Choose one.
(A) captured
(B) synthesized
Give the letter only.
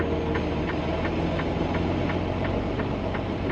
A